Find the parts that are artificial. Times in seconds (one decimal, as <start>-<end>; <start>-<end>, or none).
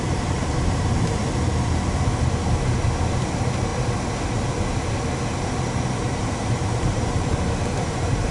0.0-1.2; 1.7-2.1; 3.2-3.7; 6.3-8.3